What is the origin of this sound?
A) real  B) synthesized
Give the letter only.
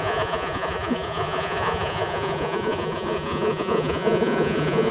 B